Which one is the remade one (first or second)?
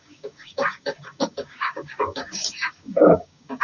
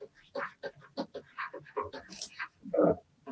first